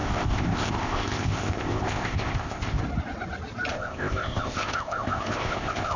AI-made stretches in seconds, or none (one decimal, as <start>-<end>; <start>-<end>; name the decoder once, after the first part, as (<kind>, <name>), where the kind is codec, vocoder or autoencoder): 0.0-2.8 (codec, ZipCodec); 3.7-6.0